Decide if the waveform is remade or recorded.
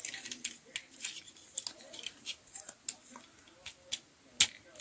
recorded